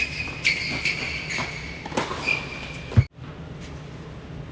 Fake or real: real